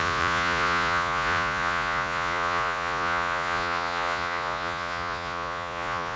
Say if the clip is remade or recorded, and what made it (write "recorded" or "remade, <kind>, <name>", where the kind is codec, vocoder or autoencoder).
remade, vocoder, Vocos